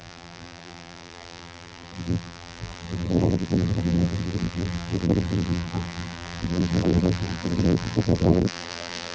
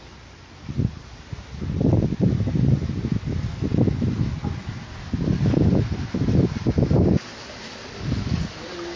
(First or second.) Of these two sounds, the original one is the second